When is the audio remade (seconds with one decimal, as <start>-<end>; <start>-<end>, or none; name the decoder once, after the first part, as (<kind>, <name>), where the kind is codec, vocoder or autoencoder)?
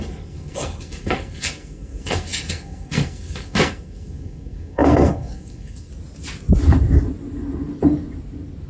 0.0-5.9 (codec, SNAC)